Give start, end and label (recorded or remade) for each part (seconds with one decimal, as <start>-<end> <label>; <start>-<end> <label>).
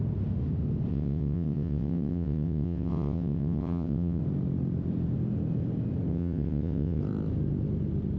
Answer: 0.0-0.9 recorded; 0.9-4.2 remade; 4.2-6.1 recorded; 6.1-7.0 remade; 7.0-8.2 recorded